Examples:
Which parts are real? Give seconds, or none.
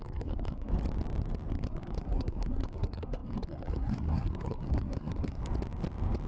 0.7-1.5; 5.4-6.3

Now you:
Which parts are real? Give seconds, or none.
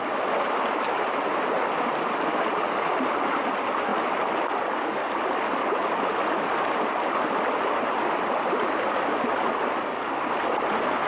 0.0-11.1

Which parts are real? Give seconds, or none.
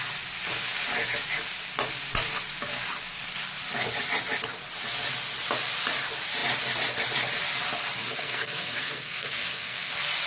0.0-8.0; 9.9-10.3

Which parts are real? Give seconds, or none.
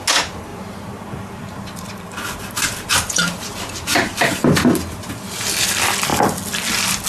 0.0-0.5; 4.4-7.1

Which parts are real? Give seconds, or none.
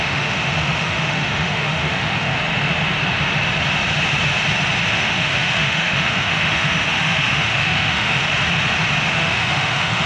2.3-4.9; 8.2-9.1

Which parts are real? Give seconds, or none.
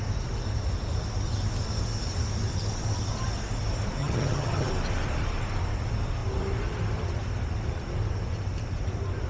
0.0-4.0; 4.7-9.3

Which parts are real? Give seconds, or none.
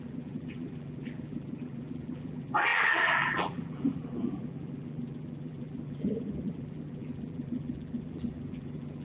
none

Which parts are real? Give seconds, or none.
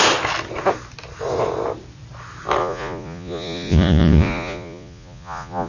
0.0-2.6